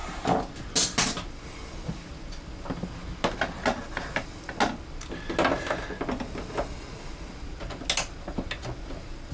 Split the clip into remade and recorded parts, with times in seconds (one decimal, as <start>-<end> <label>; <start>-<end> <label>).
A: 0.0-9.3 recorded